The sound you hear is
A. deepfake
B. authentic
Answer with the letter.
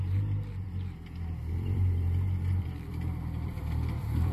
A